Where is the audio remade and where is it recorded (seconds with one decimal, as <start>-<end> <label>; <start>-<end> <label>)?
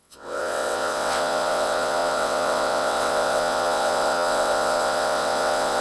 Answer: 0.0-5.8 remade